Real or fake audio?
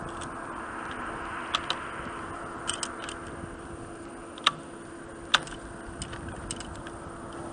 real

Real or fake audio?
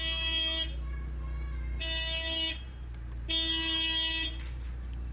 real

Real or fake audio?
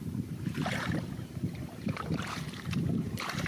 fake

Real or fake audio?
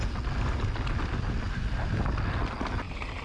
real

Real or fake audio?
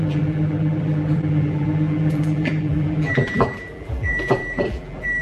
fake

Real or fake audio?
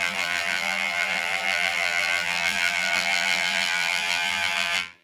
fake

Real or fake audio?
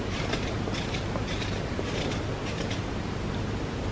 fake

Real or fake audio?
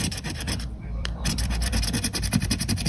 fake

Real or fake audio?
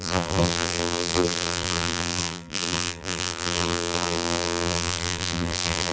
fake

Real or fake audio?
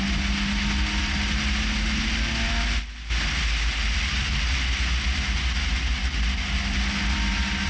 real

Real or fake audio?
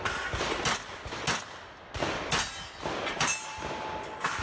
real